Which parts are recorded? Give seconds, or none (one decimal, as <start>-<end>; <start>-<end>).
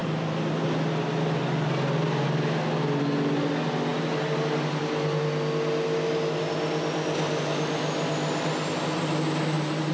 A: 1.7-9.9